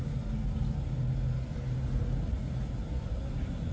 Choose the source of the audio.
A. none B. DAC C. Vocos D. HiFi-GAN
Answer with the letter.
A